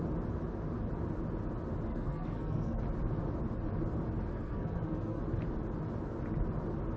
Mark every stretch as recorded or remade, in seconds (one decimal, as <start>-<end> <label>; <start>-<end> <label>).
0.0-1.9 recorded; 1.9-2.8 remade; 2.8-4.3 recorded; 4.3-5.2 remade; 5.2-7.0 recorded